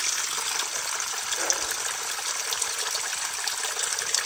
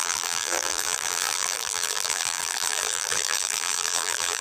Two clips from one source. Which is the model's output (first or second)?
second